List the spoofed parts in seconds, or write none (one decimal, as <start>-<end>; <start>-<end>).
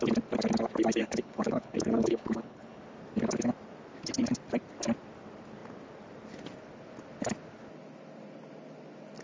1.0-2.8